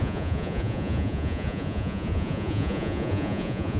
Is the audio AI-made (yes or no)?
yes